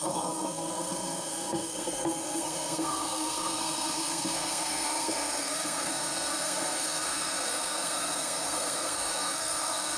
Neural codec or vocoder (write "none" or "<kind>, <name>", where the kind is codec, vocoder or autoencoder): codec, SNAC